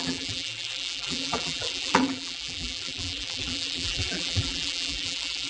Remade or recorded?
remade